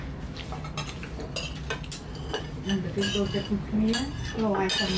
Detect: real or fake real